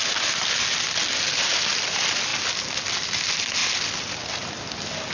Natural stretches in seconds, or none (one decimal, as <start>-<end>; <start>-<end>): 0.0-5.1